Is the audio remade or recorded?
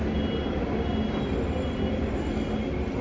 recorded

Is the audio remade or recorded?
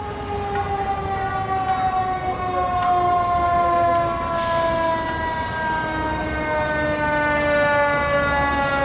recorded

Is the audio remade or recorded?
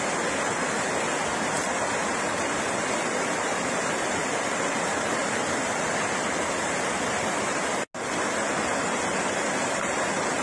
recorded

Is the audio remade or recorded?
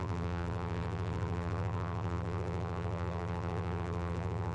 remade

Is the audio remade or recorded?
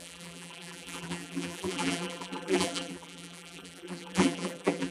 remade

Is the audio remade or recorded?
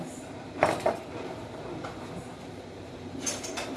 remade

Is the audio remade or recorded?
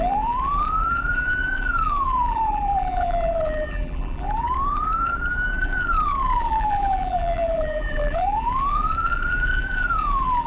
remade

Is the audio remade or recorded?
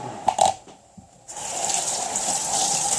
remade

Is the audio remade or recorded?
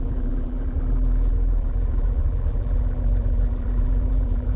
remade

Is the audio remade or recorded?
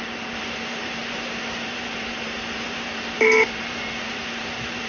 remade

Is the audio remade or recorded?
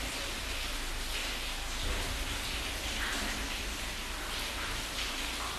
recorded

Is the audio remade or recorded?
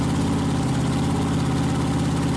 recorded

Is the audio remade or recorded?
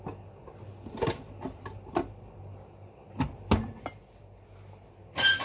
recorded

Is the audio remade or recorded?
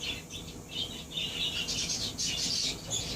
recorded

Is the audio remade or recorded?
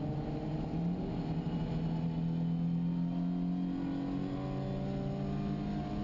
recorded